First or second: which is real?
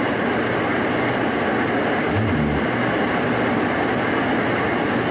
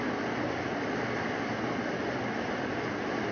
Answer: first